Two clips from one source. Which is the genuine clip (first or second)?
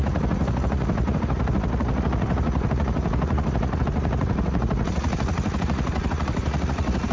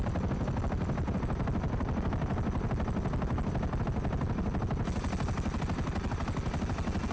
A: second